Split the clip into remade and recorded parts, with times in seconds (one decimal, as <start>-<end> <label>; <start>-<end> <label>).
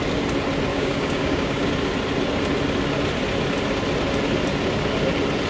0.0-0.7 recorded; 0.7-1.7 remade; 1.7-5.5 recorded